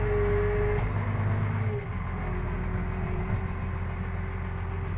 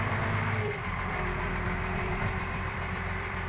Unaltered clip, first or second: first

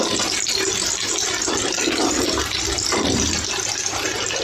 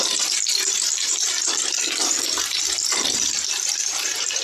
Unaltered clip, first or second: first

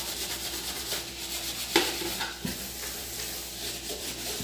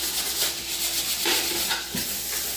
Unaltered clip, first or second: second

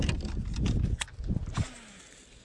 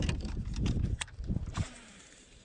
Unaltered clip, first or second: first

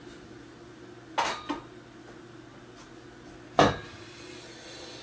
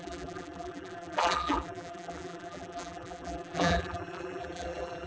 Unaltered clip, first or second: first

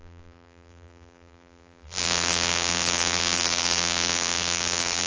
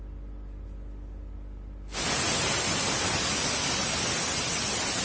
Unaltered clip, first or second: second